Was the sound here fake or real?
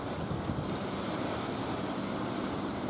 real